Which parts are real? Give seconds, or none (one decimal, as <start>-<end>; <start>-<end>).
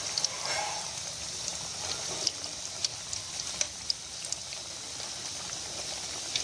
1.5-2.0